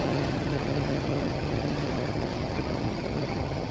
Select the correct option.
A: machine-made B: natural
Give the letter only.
A